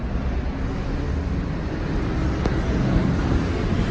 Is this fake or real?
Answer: real